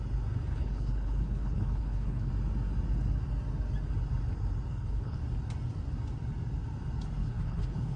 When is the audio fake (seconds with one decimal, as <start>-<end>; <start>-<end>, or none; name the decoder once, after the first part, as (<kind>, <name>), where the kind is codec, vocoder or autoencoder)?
0.5-2.3 (codec, HILCodec); 4.7-5.2; 7.2-8.0

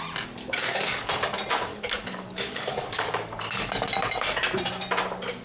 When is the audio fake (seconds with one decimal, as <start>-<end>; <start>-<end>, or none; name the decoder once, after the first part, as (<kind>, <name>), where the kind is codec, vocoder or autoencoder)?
0.4-1.1 (codec, DAC); 1.7-3.9

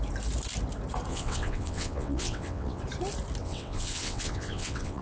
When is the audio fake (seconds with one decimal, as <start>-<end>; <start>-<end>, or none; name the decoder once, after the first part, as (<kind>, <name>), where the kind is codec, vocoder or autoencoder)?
1.1-2.8 (vocoder, WaveNeXt); 3.4-5.0

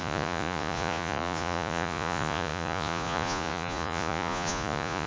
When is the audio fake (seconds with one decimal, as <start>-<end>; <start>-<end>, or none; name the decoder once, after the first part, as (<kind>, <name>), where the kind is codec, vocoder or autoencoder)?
0.0-5.1 (vocoder, Vocos)

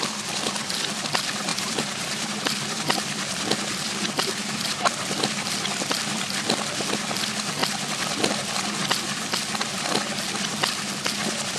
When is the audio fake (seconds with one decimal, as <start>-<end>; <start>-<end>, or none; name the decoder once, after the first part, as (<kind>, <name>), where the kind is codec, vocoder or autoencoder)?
0.0-7.6 (vocoder, BigVGAN v2); 8.3-8.8